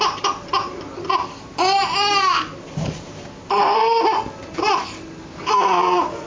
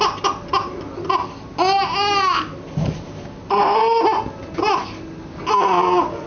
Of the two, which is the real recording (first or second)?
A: second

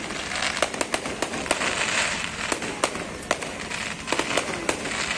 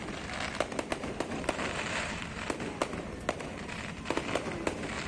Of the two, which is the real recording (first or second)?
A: first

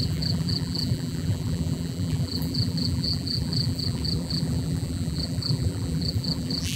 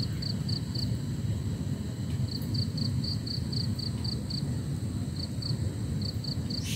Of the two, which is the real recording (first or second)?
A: second